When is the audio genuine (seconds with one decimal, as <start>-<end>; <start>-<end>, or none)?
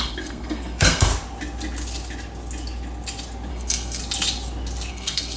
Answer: 1.1-3.5; 4.0-4.9